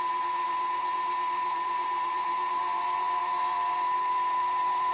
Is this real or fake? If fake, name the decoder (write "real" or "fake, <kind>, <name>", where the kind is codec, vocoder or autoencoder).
fake, vocoder, BigVGAN v2